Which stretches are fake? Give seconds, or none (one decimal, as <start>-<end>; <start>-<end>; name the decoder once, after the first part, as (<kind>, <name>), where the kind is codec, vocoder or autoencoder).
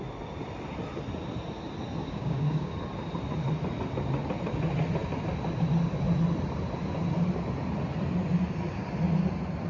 2.0-2.7 (codec, DAC)